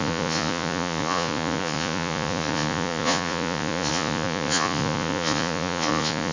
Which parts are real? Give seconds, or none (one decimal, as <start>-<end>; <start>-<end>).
none